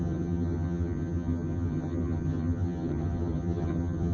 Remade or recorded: remade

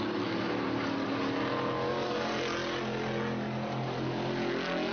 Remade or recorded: recorded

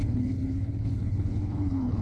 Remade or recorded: remade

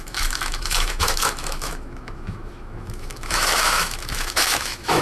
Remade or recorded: remade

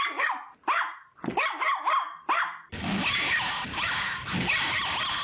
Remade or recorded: recorded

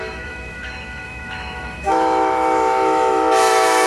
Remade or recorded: remade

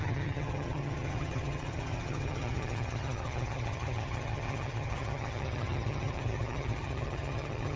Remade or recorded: remade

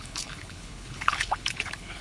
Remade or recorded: remade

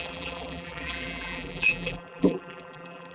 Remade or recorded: remade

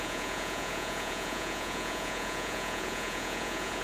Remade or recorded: remade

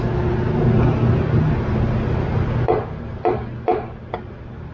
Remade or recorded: recorded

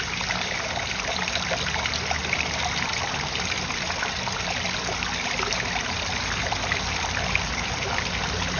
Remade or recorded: remade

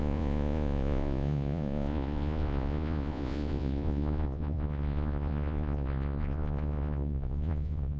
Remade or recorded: remade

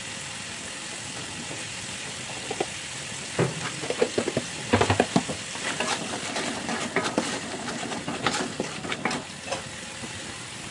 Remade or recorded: remade